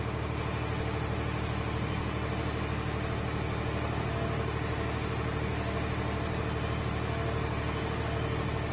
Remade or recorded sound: recorded